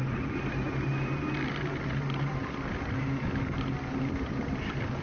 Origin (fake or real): real